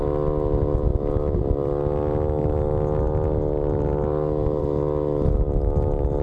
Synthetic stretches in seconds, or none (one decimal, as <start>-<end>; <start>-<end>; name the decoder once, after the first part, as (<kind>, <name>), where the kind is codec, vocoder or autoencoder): none

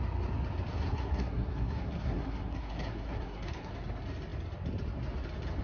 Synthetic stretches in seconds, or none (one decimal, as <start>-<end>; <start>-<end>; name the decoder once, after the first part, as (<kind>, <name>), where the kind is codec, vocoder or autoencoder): 0.7-3.7 (codec, SNAC)

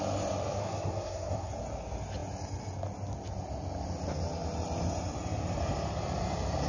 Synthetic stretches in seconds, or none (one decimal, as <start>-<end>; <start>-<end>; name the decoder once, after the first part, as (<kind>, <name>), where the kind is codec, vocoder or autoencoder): 0.6-1.5 (codec, SNAC)